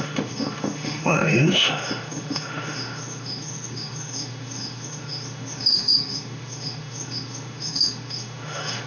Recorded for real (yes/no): no